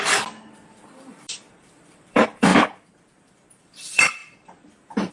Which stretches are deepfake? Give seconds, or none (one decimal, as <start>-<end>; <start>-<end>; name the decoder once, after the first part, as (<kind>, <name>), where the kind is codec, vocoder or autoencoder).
0.0-2.5 (vocoder, BigVGAN v2); 3.2-4.2